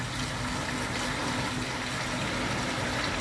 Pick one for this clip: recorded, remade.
recorded